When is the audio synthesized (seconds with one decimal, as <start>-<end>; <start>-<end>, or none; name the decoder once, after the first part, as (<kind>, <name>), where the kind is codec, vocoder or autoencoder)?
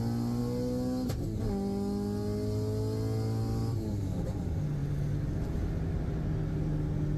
none